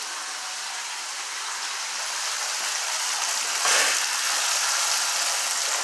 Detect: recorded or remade recorded